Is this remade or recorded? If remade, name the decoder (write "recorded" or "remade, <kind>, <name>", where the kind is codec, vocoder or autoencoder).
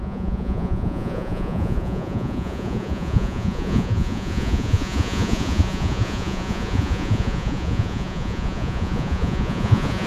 remade, vocoder, Vocos